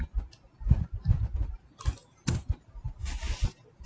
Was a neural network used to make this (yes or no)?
no